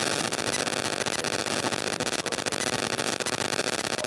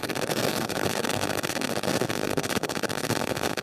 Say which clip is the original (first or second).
first